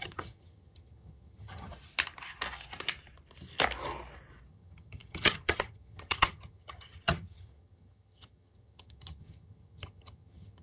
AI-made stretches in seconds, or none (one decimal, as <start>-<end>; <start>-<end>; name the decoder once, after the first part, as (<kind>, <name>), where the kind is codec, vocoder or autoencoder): 0.0-1.7 (vocoder, HiFi-GAN); 4.5-10.6